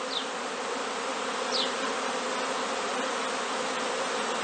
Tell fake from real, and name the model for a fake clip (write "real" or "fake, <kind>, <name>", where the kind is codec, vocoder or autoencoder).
real